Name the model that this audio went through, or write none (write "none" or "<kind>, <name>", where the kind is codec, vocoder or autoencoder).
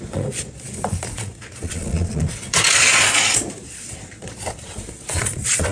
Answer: vocoder, Vocos